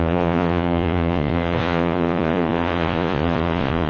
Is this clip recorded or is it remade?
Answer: remade